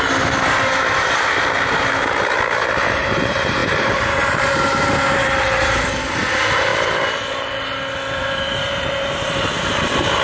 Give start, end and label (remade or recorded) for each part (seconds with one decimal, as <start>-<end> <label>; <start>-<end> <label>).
0.0-6.7 remade; 6.7-8.2 recorded; 8.2-10.2 remade